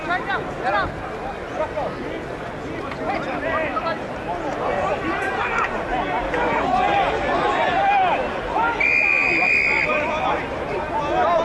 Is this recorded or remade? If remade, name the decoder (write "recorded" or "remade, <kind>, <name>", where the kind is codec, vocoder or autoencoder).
recorded